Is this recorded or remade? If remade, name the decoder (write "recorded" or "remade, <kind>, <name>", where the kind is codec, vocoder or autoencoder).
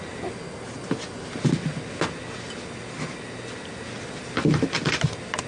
recorded